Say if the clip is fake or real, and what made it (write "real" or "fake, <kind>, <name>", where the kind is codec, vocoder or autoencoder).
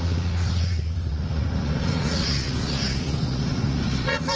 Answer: fake, vocoder, Vocos